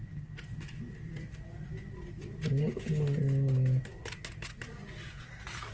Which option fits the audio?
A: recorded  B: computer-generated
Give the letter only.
A